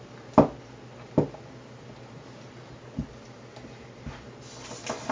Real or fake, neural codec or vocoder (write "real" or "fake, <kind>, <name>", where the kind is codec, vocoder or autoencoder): real